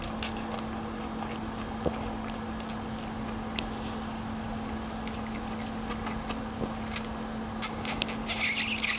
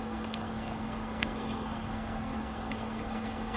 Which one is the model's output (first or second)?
second